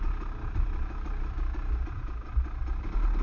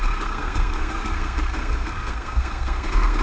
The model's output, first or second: second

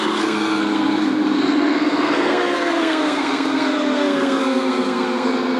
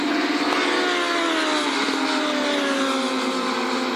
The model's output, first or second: first